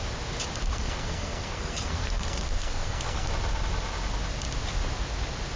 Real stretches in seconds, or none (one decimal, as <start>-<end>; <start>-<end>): 0.0-0.7; 3.3-5.6